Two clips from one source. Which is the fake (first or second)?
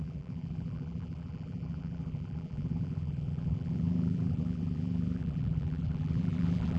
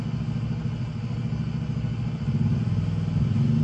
first